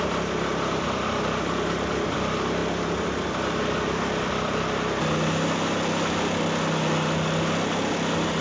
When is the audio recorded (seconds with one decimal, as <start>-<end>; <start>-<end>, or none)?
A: 0.0-8.4